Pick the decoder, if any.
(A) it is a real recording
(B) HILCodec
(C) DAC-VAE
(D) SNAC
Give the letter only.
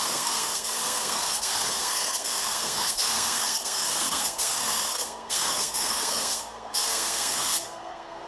D